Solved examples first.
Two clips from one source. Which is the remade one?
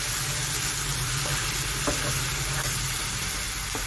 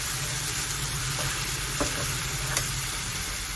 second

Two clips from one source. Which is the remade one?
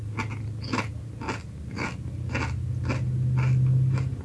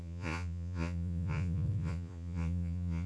second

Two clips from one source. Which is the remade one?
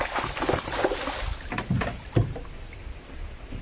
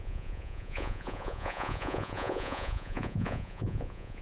second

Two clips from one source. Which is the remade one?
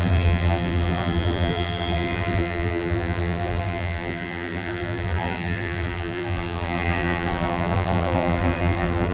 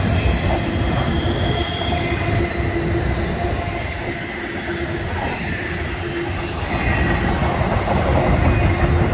first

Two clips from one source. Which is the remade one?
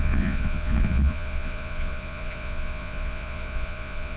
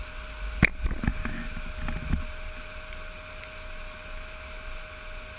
first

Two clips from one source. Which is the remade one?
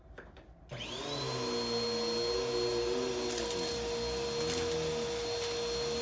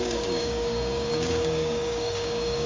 second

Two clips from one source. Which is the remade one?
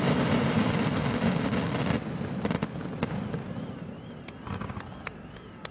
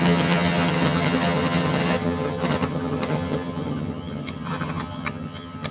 second